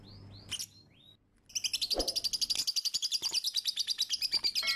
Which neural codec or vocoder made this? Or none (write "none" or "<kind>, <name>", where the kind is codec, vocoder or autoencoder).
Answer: none